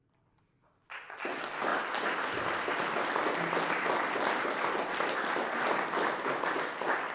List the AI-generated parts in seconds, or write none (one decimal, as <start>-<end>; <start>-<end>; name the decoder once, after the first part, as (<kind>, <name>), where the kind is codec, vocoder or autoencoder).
none